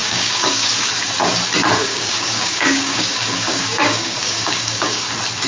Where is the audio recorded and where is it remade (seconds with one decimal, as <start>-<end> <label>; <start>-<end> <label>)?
0.0-0.9 remade; 0.9-1.8 recorded; 1.8-5.1 remade; 5.1-5.5 recorded